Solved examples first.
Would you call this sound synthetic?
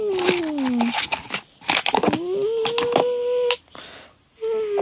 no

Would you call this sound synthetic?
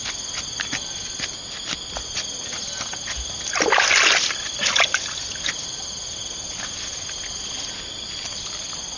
no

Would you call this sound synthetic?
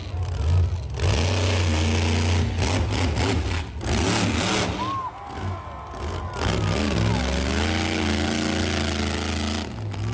no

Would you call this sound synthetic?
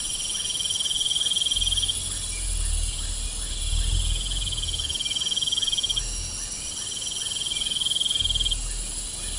no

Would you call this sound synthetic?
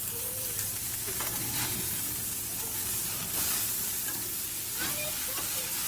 yes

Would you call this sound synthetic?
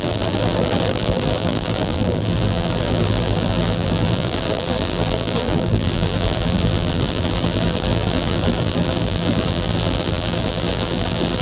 yes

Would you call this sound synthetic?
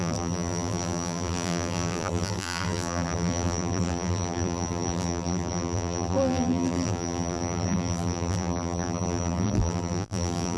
yes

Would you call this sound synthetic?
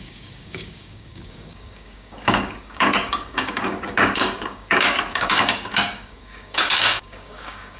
yes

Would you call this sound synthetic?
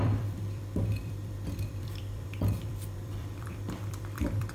yes